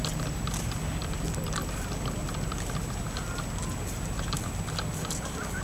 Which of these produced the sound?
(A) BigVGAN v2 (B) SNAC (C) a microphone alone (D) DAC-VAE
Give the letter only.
C